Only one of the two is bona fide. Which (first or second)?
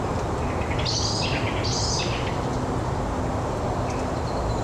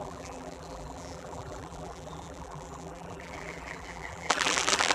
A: first